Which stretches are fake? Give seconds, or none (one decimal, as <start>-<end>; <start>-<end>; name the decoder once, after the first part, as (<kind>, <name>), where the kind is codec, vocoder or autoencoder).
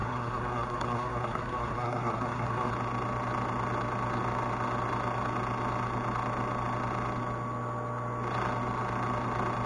0.0-2.7 (codec, SNAC)